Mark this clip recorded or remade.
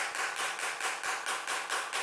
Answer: recorded